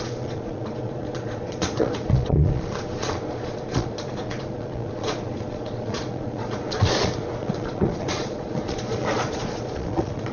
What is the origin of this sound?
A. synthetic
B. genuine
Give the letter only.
A